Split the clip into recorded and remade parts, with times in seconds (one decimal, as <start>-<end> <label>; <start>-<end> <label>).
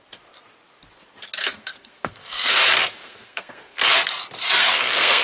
0.0-1.4 recorded; 1.4-2.6 remade; 2.6-3.0 recorded; 3.0-3.8 remade; 3.8-4.6 recorded; 4.6-5.2 remade